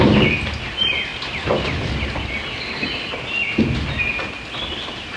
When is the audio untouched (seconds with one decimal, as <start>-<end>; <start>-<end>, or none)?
0.0-5.2